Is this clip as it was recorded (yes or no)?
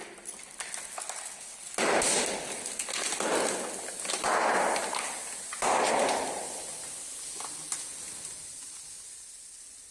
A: yes